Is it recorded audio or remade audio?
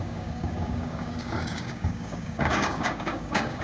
remade